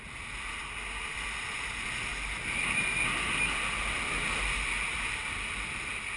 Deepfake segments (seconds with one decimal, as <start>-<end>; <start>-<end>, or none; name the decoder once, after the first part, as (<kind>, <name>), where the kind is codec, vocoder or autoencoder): none